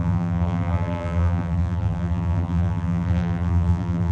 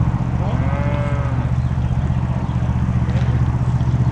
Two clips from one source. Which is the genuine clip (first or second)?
second